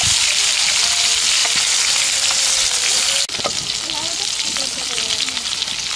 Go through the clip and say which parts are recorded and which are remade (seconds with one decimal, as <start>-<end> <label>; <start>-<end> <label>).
0.0-6.0 recorded